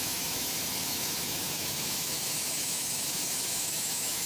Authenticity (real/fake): fake